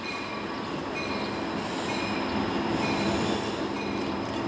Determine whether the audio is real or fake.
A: real